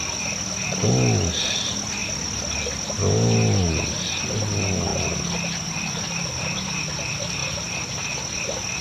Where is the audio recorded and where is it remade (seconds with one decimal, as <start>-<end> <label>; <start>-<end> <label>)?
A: 0.0-4.9 recorded; 4.9-6.2 remade; 6.2-7.4 recorded; 7.4-8.4 remade; 8.4-8.8 recorded